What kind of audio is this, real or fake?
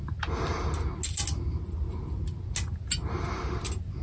real